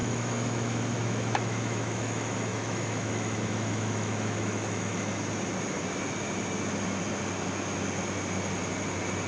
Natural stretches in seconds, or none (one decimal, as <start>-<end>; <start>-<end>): 5.2-9.3